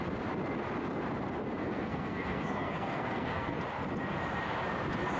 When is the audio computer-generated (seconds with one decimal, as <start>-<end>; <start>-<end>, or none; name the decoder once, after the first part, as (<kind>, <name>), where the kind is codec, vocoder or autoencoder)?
1.6-3.6 (codec, SNAC)